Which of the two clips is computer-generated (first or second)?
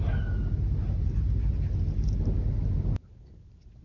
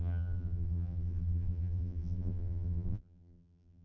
second